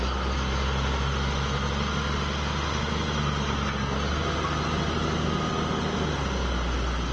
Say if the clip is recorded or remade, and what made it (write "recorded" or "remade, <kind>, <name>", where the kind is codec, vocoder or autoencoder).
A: recorded